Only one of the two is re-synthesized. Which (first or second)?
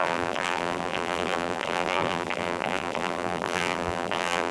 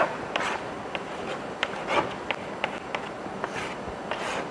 first